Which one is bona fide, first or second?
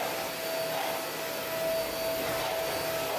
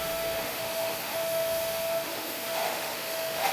first